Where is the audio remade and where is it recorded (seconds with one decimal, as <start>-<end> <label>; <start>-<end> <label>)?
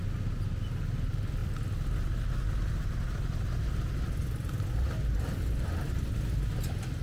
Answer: 0.0-7.0 recorded